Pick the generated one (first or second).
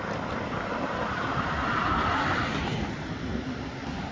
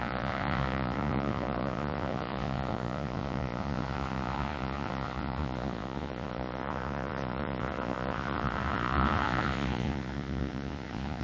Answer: second